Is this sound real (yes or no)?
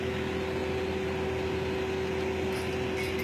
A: yes